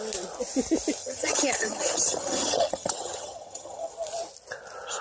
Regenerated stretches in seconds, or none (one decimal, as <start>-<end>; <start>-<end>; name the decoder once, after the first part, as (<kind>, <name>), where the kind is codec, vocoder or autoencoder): 1.0-3.9 (vocoder, HiFi-GAN)